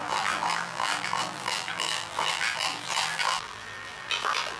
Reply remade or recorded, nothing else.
remade